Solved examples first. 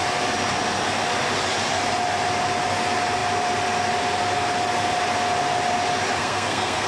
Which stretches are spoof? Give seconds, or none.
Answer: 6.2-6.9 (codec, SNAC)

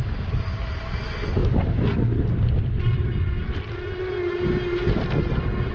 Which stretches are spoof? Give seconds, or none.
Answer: none

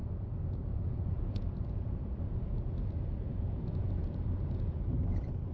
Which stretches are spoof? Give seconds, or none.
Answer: 0.0-2.9 (vocoder, Vocos); 3.3-4.9

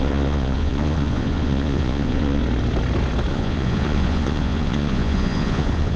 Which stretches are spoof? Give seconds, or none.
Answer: 0.0-2.4 (vocoder, Vocos); 3.3-6.0

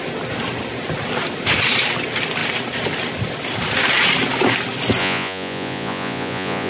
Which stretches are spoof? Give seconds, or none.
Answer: 5.0-6.7 (vocoder, Vocos)

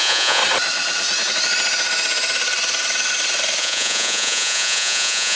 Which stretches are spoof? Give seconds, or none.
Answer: 0.0-0.4 (vocoder, Vocos); 3.6-5.4

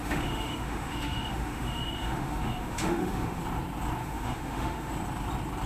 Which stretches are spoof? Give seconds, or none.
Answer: 0.0-3.4 (autoencoder, DAC-VAE); 4.0-4.9

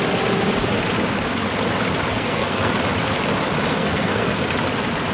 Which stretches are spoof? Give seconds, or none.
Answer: 2.1-2.7 (codec, SNAC); 3.7-4.4